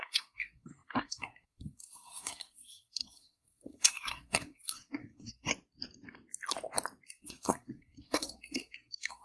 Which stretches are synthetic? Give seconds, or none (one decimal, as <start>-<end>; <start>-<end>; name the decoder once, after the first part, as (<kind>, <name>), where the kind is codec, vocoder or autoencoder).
0.0-5.5 (codec, SNAC); 7.1-9.2